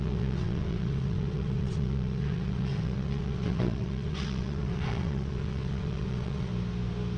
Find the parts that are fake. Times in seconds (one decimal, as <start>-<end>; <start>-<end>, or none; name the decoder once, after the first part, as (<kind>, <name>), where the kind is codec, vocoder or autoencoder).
0.0-6.5 (vocoder, WaveNeXt)